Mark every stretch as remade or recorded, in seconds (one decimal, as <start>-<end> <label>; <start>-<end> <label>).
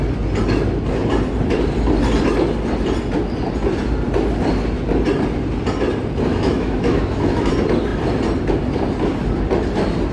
0.0-6.3 recorded; 6.3-7.5 remade; 7.5-10.1 recorded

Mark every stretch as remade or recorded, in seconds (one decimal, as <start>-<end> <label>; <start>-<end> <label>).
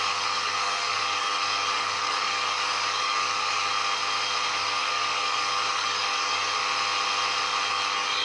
0.0-3.7 remade; 3.7-4.5 recorded; 4.5-6.6 remade; 6.6-7.7 recorded; 7.7-8.2 remade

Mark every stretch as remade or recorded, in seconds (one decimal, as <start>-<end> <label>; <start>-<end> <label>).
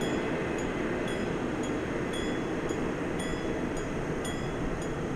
0.0-5.2 recorded